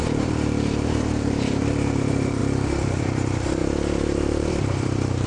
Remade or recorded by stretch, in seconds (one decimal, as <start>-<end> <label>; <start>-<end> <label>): 0.0-2.4 remade; 2.4-3.0 recorded; 3.0-3.6 remade; 3.6-4.5 recorded; 4.5-5.3 remade